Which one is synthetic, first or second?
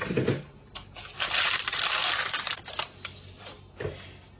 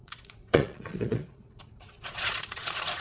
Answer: second